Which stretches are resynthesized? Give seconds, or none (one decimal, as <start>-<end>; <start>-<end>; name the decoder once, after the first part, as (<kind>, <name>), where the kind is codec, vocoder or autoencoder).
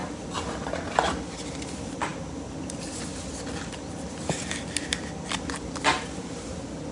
none